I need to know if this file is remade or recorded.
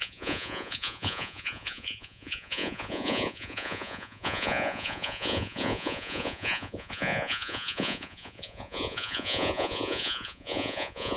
remade